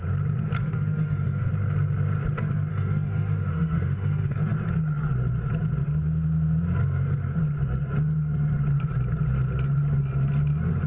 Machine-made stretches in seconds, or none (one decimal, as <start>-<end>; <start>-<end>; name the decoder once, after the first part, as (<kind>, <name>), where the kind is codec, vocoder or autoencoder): 0.6-1.5 (autoencoder, DAC-VAE); 2.7-4.4